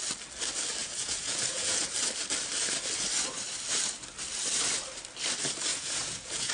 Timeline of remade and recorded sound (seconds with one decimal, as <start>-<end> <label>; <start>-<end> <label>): 0.0-0.8 recorded; 0.8-1.9 remade; 1.9-5.7 recorded; 5.7-6.5 remade